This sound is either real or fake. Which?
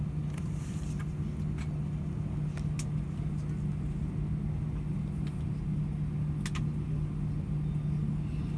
real